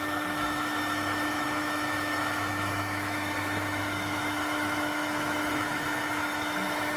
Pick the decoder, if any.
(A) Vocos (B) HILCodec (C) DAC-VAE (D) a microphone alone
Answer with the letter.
C